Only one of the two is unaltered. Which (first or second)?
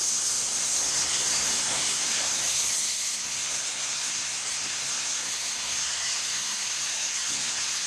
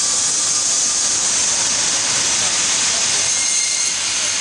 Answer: second